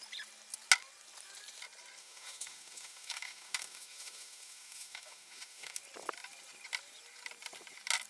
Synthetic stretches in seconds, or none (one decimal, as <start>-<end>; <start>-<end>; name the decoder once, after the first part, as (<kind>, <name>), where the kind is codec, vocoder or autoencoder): 2.0-5.8 (autoencoder, DAC-VAE)